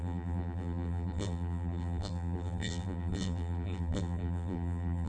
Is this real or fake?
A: fake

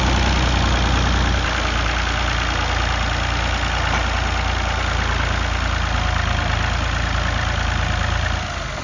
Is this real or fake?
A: real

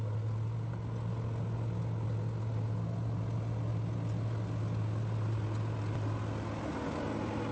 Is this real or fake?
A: real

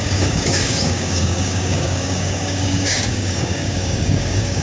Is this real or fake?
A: fake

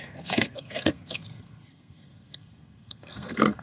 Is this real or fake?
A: fake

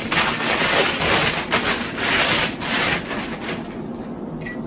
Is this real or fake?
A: real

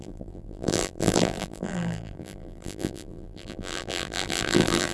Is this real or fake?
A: fake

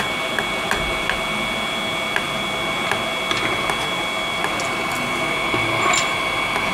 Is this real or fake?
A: real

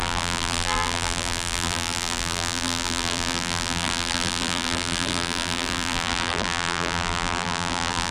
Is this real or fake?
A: fake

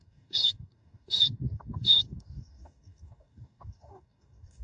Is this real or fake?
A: fake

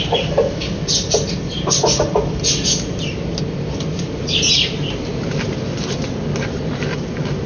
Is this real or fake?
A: real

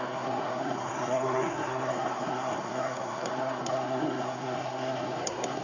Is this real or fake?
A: fake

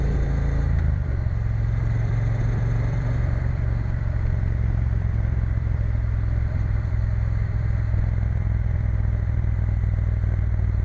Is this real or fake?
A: fake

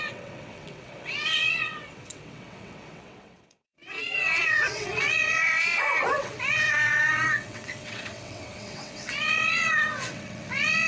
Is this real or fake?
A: fake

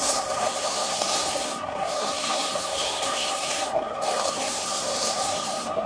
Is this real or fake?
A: fake